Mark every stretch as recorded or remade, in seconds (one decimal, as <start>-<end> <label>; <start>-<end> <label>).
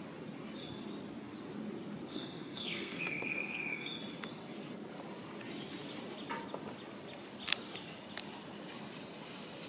0.0-2.1 recorded; 2.1-4.0 remade; 4.0-9.7 recorded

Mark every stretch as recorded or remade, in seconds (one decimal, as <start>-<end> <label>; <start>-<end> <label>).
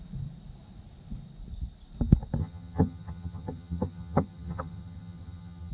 0.0-2.4 recorded; 2.4-5.7 remade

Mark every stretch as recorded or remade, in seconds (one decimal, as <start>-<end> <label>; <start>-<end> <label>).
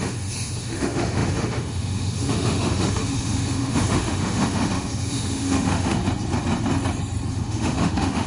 0.0-6.0 remade; 6.0-7.3 recorded; 7.3-8.3 remade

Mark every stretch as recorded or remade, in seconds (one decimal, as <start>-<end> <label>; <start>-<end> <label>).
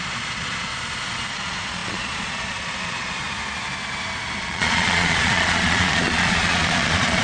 0.0-0.7 remade; 0.7-1.3 recorded; 1.3-3.2 remade; 3.2-4.4 recorded; 4.4-7.2 remade